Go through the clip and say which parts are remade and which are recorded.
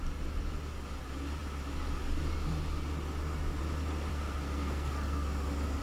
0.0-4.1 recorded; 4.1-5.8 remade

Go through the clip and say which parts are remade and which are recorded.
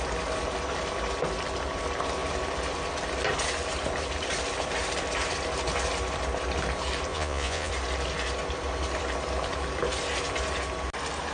0.0-7.1 recorded; 7.1-7.7 remade; 7.7-11.3 recorded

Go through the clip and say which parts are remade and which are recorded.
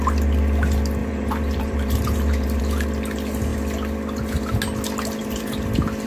0.0-1.0 recorded; 1.0-2.6 remade; 2.6-6.1 recorded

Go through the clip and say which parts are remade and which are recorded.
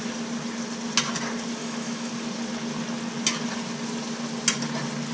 0.0-1.6 recorded; 1.6-2.1 remade; 2.1-5.1 recorded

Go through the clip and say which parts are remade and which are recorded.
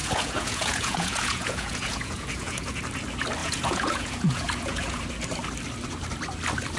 0.0-2.8 remade; 2.8-3.4 recorded; 3.4-5.0 remade; 5.0-6.8 recorded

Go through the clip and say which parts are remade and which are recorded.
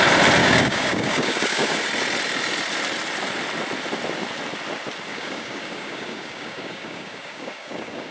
0.0-0.4 recorded; 0.4-1.8 remade; 1.8-5.1 recorded; 5.1-8.1 remade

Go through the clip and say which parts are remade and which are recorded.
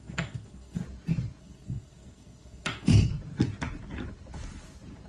0.0-0.8 remade; 0.8-1.4 recorded; 1.4-3.1 remade; 3.1-5.1 recorded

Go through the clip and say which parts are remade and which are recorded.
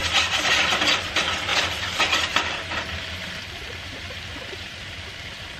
0.0-0.7 remade; 0.7-1.5 recorded; 1.5-4.9 remade; 4.9-5.6 recorded